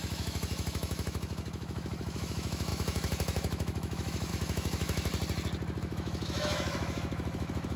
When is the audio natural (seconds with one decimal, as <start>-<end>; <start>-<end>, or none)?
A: 5.1-5.8